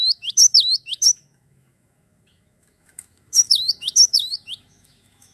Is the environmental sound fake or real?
fake